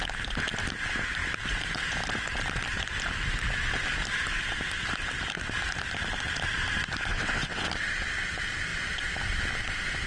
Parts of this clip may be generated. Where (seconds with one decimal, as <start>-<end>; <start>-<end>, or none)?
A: 7.1-7.7

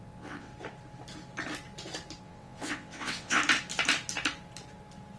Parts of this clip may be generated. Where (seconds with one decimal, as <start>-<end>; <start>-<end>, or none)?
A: 0.0-0.5; 2.2-3.4

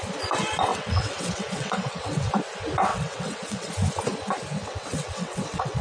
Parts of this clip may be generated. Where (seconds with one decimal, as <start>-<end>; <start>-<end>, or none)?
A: 0.7-2.3; 2.9-3.7; 4.6-5.8

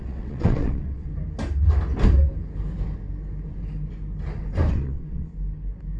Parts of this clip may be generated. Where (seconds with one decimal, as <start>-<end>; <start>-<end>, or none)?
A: 0.0-1.1; 4.7-5.3

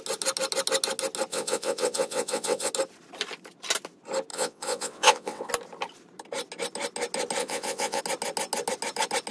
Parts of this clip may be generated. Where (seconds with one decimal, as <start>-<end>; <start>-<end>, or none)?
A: 1.3-2.7; 4.3-5.5; 7.4-8.0

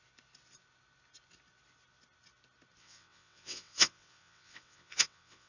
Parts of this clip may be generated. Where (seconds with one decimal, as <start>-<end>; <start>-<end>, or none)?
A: 2.8-5.5

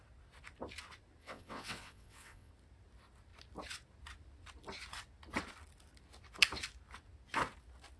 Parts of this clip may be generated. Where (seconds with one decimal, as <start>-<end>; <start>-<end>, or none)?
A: 1.2-2.5